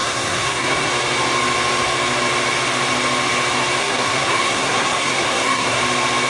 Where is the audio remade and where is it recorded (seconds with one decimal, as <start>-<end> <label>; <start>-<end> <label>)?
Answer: 0.0-0.9 remade; 0.9-3.8 recorded; 3.8-5.8 remade; 5.8-6.3 recorded